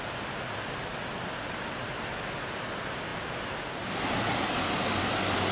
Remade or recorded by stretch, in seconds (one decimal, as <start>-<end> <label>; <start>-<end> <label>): 0.0-5.5 recorded